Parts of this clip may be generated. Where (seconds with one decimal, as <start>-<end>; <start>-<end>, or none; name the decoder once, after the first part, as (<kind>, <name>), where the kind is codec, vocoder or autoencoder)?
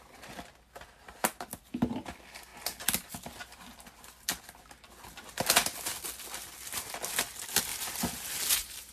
7.7-8.9 (vocoder, BigVGAN v2)